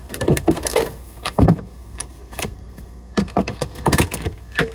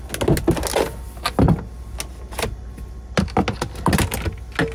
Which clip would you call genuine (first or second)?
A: second